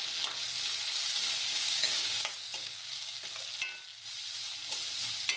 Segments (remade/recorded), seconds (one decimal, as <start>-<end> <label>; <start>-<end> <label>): 0.0-1.5 recorded; 1.5-3.2 remade; 3.2-5.4 recorded